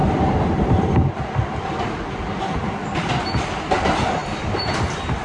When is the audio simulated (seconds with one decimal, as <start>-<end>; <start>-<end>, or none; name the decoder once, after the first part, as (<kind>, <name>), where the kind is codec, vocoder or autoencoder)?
none